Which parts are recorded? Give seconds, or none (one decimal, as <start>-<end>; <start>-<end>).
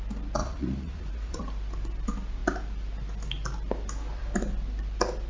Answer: 0.0-0.4; 1.4-5.3